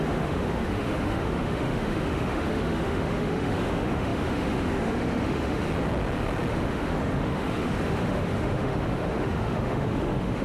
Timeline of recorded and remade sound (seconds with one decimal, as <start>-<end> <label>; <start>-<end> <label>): 0.0-5.6 remade; 5.6-6.5 recorded; 6.5-10.4 remade